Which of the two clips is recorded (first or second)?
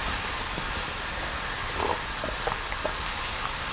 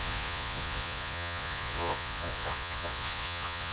first